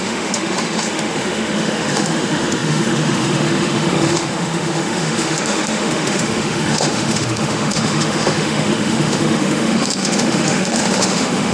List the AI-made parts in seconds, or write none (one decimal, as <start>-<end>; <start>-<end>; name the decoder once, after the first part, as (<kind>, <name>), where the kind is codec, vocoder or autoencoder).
0.0-11.5 (autoencoder, DAC-VAE)